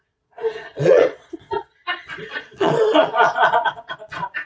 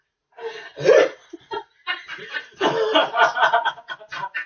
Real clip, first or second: second